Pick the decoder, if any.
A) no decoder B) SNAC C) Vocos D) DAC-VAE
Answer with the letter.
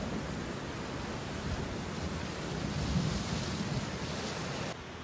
A